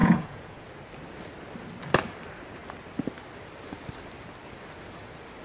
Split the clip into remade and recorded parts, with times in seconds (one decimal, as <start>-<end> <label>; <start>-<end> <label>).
0.0-0.6 remade; 0.6-5.4 recorded